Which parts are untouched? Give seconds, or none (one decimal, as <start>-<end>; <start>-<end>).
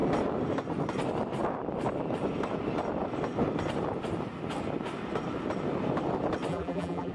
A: 0.0-6.5